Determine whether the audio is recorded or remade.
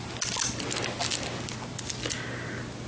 recorded